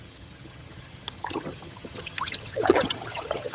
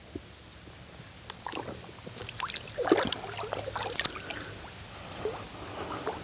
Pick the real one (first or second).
second